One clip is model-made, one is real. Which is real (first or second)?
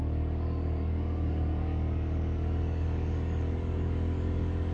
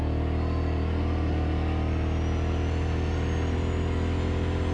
second